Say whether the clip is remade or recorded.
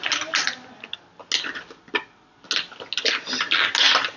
recorded